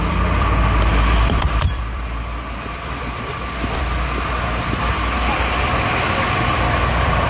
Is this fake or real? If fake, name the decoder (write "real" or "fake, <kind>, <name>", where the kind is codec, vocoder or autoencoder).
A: fake, vocoder, BigVGAN v2